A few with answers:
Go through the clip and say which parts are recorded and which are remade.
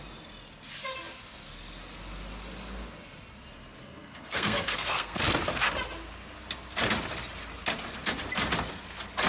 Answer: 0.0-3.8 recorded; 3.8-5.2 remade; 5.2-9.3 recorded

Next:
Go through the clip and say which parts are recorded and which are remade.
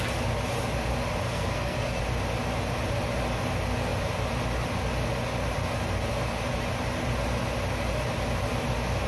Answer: 0.0-1.2 recorded; 1.2-2.0 remade; 2.0-9.1 recorded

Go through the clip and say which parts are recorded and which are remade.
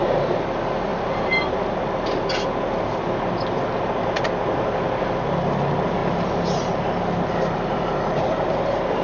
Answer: 0.0-9.0 recorded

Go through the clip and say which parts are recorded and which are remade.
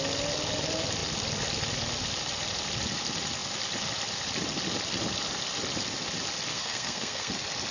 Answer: 0.0-6.5 recorded; 6.5-7.3 remade; 7.3-7.7 recorded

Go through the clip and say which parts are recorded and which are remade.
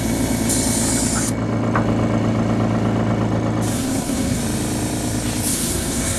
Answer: 0.0-3.7 recorded; 3.7-4.4 remade; 4.4-5.5 recorded; 5.5-6.2 remade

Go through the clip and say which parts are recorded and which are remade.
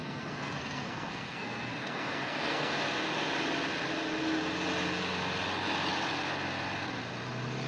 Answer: 0.0-2.7 remade; 2.7-7.7 recorded